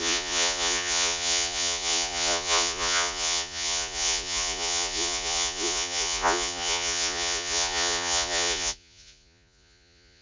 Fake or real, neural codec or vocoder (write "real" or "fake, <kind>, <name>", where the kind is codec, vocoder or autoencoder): fake, vocoder, Vocos